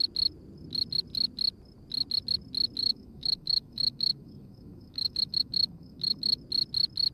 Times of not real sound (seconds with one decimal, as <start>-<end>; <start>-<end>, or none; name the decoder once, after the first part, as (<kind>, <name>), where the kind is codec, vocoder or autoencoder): 2.8-6.4 (autoencoder, DAC-VAE)